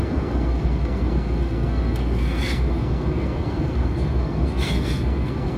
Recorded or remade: remade